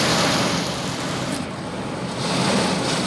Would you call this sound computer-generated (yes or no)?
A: no